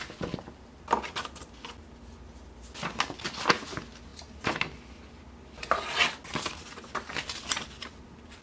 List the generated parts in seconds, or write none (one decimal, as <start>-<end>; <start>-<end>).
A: none